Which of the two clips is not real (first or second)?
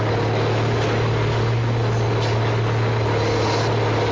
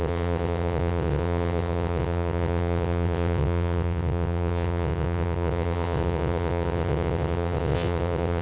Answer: second